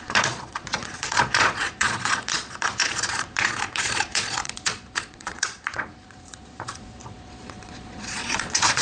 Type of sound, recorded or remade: remade